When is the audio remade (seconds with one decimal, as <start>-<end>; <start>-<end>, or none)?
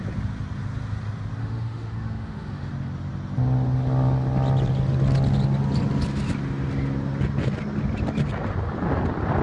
1.4-2.7